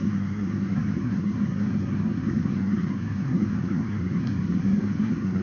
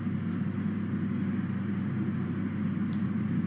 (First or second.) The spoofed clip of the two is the first